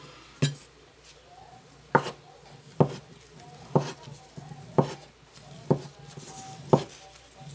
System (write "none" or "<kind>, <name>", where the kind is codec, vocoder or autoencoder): none